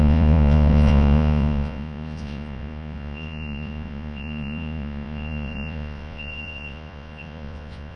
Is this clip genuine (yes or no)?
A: no